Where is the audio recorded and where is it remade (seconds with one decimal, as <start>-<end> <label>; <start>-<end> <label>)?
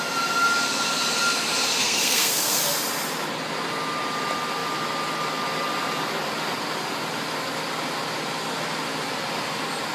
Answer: 0.0-1.8 recorded; 1.8-2.6 remade; 2.6-9.9 recorded